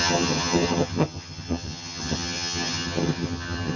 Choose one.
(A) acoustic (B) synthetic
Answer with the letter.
B